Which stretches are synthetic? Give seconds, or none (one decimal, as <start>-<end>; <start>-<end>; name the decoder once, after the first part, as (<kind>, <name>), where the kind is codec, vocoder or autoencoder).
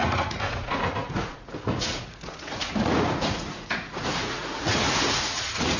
0.0-5.8 (vocoder, Vocos)